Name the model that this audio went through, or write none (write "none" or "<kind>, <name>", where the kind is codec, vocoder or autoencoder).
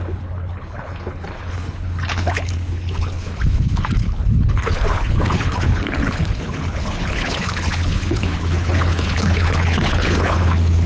codec, HILCodec